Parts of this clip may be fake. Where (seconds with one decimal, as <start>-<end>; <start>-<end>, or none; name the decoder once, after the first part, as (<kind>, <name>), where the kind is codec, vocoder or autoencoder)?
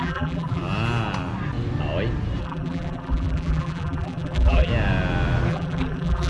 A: 0.0-0.6 (vocoder, BigVGAN v2); 2.4-4.7; 5.5-6.3